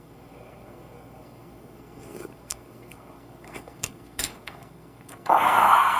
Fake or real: fake